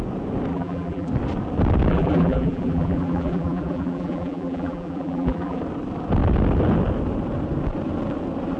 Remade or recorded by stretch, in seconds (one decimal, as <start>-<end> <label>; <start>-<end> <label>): 0.0-0.5 recorded; 0.5-1.1 remade; 1.1-1.9 recorded; 1.9-5.6 remade; 5.6-8.6 recorded